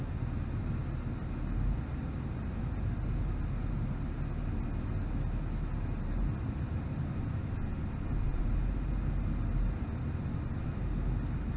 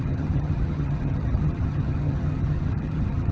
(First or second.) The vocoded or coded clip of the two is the second